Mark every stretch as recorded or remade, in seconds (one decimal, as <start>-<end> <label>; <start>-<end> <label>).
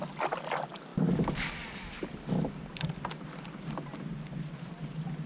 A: 0.0-5.3 recorded